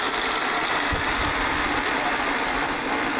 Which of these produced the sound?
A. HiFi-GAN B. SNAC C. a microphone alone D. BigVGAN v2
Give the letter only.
D